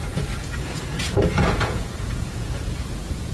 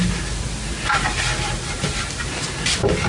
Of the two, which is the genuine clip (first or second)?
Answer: second